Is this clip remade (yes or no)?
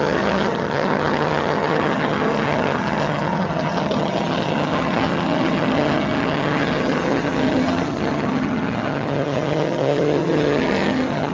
yes